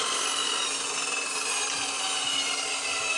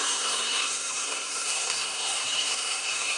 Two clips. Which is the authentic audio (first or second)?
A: first